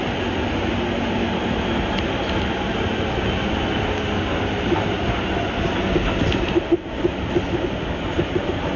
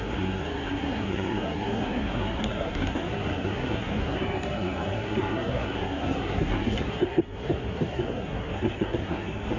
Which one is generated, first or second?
second